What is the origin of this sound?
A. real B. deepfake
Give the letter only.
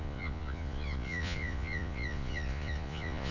B